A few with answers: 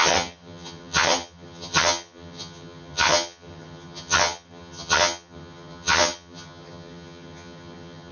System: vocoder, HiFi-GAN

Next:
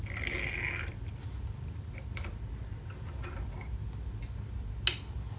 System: none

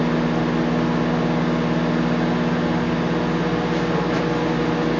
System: none